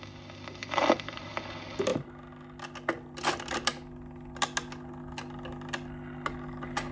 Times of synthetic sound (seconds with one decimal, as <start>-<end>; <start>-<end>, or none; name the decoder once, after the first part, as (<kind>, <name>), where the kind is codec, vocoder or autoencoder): 0.6-1.4 (vocoder, BigVGAN v2)